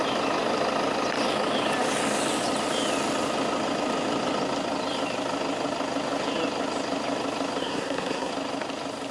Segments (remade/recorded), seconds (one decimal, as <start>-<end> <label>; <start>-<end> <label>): 0.0-7.6 recorded; 7.6-8.3 remade; 8.3-9.1 recorded